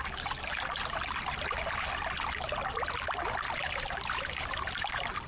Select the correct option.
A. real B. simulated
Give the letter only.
A